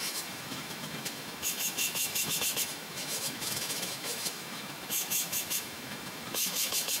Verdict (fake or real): fake